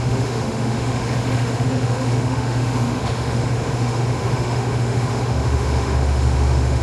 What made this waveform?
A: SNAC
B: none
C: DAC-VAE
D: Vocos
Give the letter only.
C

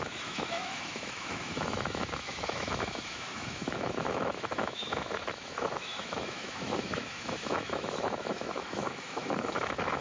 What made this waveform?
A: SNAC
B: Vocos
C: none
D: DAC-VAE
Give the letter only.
D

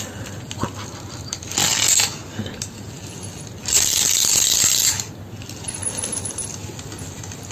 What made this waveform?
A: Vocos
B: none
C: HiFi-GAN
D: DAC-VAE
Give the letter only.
B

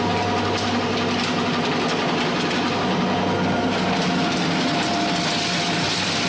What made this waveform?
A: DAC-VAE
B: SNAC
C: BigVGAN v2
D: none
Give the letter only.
D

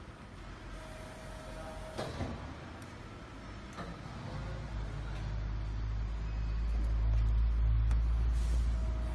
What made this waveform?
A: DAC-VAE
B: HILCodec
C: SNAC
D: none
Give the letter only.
D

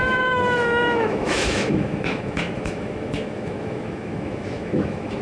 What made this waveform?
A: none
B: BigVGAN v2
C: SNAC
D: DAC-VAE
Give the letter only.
D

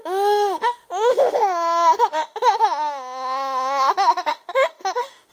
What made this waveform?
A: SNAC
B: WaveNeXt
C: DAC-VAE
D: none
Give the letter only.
C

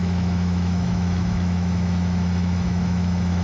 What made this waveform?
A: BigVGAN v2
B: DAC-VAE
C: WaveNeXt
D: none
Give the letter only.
B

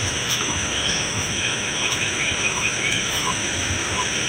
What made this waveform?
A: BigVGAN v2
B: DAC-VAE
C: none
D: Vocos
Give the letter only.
B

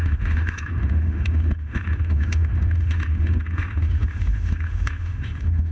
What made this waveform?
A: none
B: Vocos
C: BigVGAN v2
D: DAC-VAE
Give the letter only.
D